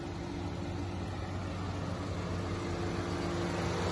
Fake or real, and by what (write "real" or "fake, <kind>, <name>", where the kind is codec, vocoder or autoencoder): real